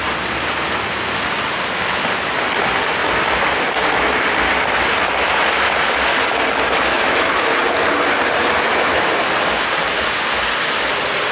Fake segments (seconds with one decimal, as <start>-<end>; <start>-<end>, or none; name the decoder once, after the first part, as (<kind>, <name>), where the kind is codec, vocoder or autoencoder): 6.9-7.5 (autoencoder, DAC-VAE)